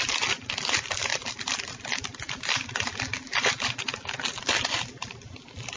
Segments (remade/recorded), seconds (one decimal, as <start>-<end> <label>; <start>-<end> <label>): 0.0-5.8 recorded